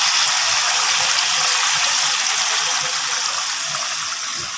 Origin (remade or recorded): recorded